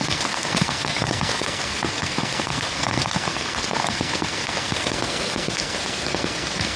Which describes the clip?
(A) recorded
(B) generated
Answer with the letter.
B